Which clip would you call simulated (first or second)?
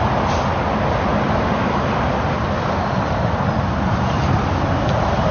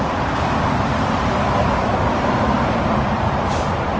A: second